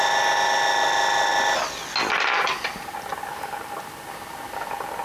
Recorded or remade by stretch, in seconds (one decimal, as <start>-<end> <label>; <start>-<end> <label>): 0.0-5.0 recorded